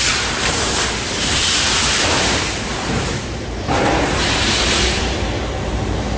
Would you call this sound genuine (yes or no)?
no